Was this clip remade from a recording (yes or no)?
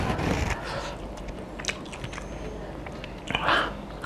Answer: no